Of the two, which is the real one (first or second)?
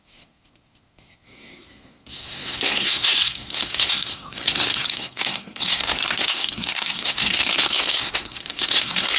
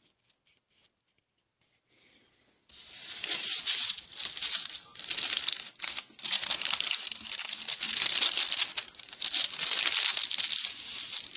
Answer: second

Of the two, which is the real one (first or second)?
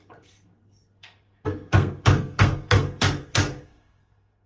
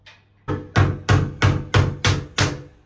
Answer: second